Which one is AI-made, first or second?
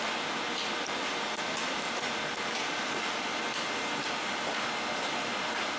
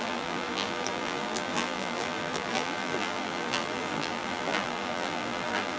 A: second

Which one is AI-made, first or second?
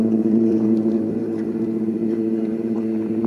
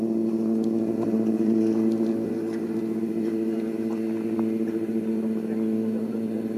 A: first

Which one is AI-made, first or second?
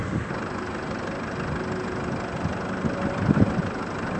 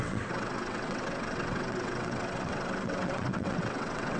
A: second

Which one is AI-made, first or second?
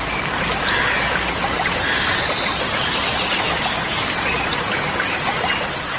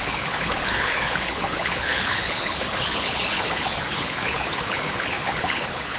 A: second